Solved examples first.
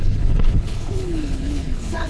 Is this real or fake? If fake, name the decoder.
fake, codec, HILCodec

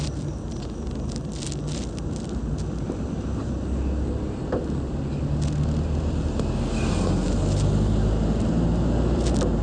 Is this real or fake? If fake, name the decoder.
real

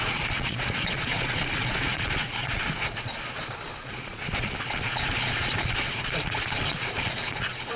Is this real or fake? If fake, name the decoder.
fake, vocoder, Vocos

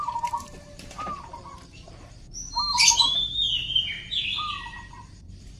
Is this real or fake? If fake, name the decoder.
fake, vocoder, BigVGAN v2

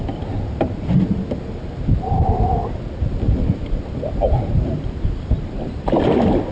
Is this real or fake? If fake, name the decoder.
real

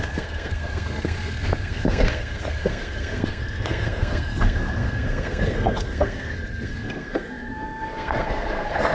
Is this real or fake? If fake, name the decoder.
fake, codec, SNAC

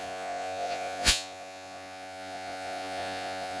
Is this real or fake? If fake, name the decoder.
fake, vocoder, Vocos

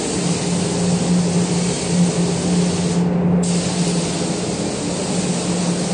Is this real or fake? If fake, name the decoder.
real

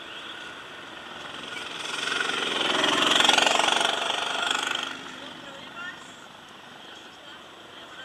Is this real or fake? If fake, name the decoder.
real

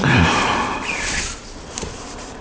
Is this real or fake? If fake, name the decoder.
real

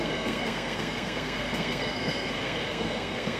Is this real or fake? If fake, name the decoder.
fake, codec, SNAC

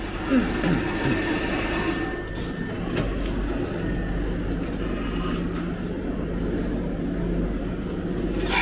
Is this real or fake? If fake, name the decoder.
real